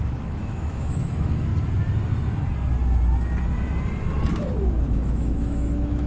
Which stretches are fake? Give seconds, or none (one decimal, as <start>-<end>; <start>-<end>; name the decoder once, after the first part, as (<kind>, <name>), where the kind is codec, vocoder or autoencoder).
0.0-1.5 (autoencoder, DAC-VAE); 4.3-6.1